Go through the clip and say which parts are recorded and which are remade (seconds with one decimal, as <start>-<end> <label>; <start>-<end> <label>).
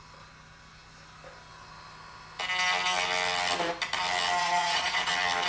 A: 0.0-4.4 recorded; 4.4-5.1 remade; 5.1-5.5 recorded